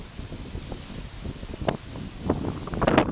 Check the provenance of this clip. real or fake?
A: real